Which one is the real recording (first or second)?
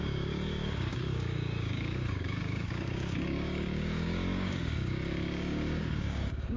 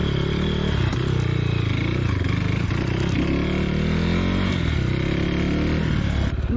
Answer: second